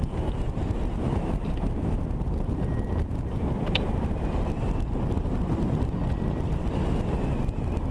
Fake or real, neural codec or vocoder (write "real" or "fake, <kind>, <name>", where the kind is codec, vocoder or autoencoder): real